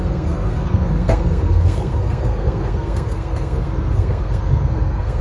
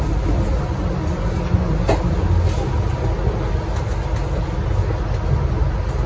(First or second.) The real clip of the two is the second